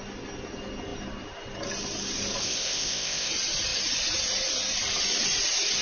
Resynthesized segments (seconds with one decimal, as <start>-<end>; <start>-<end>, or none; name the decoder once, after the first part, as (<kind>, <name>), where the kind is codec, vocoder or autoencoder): 2.4-3.3 (codec, ZipCodec)